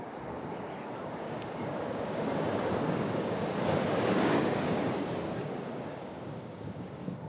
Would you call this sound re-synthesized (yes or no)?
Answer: yes